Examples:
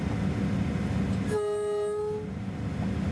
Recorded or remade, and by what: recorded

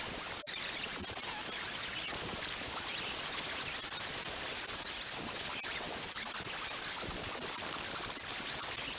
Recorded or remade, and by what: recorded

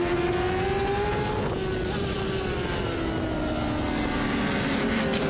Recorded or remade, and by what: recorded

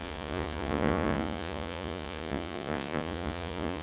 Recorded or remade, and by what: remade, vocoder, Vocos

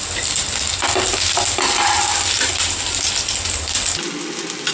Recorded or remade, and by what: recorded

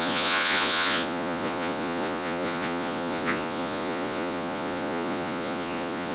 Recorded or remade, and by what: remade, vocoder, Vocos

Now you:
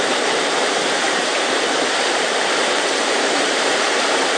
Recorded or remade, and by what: remade, vocoder, BigVGAN v2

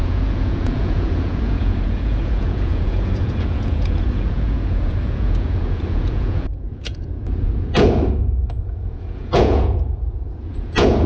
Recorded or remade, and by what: remade, vocoder, Vocos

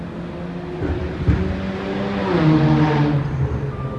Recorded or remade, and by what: recorded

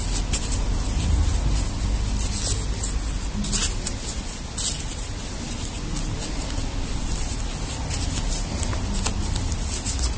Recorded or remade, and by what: recorded